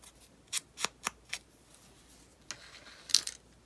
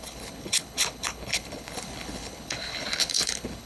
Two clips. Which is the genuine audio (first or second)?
first